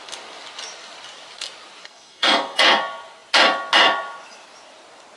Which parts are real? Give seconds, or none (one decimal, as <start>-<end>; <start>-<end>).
0.0-1.8; 2.8-5.2